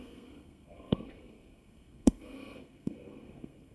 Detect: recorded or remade remade